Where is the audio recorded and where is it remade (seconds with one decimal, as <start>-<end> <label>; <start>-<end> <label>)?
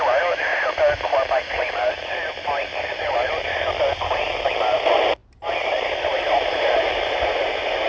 0.0-0.5 remade; 0.5-1.6 recorded; 1.6-2.7 remade; 2.7-4.4 recorded; 4.4-7.9 remade